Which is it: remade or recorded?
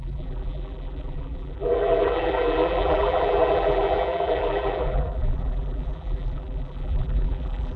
remade